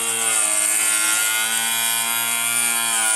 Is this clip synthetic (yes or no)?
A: no